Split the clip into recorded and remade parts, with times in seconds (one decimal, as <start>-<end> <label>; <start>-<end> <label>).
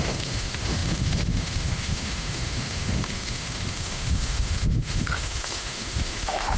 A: 0.0-6.6 remade